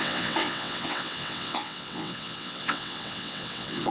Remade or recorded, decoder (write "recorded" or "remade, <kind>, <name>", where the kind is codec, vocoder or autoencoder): remade, vocoder, WaveNeXt